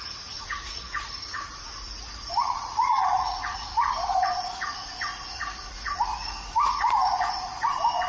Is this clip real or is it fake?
fake